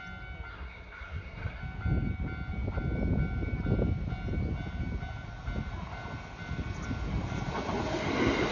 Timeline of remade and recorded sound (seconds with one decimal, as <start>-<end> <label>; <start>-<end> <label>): 0.0-0.5 recorded; 0.5-1.6 remade; 1.6-8.5 recorded